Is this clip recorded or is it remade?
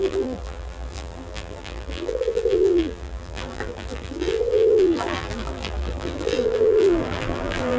remade